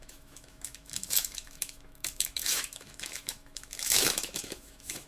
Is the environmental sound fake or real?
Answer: fake